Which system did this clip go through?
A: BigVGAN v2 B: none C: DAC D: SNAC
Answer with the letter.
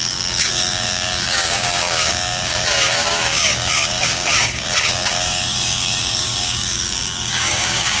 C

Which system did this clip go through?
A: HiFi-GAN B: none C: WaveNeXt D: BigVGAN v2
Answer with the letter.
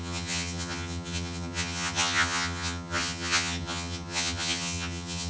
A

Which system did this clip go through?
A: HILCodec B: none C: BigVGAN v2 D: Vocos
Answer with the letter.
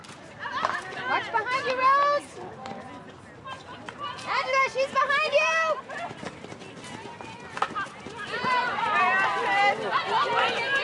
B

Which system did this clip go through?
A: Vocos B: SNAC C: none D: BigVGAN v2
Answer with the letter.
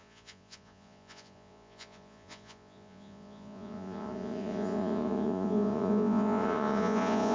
A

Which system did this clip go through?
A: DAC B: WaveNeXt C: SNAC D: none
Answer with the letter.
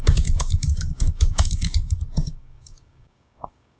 A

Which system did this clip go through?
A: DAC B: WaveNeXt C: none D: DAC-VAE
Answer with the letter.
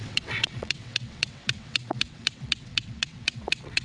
B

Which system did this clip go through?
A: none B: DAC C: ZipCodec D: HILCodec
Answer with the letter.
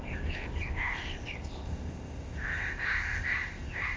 C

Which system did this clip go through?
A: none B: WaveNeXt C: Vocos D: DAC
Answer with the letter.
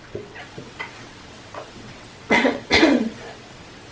B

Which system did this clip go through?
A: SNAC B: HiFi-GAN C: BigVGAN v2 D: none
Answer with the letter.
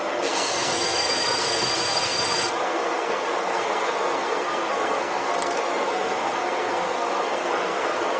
A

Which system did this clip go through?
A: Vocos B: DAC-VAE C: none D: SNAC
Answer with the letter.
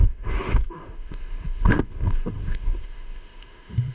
B